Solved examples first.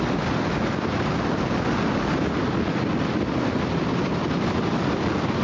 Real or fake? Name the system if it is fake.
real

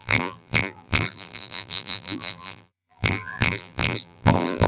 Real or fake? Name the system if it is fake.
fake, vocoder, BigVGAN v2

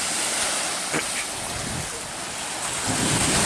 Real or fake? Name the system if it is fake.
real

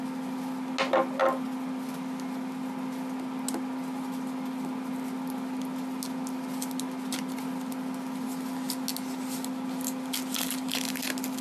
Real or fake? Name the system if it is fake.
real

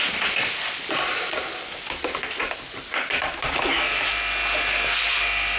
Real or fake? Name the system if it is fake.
real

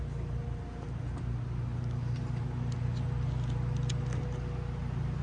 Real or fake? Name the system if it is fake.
real